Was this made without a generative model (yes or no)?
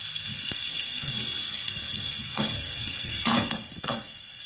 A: no